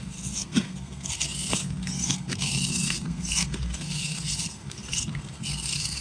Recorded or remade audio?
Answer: remade